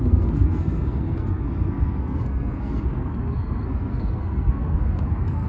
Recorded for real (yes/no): no